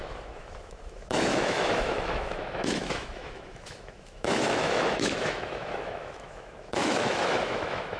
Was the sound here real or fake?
fake